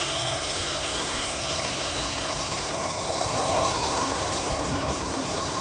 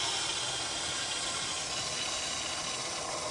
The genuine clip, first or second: second